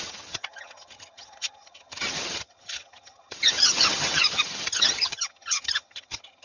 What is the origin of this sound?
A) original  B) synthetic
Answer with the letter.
B